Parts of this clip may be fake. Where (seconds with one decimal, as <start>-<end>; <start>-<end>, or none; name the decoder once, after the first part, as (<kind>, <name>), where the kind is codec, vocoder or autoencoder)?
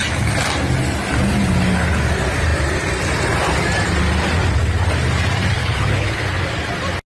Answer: 5.6-6.2 (codec, HILCodec)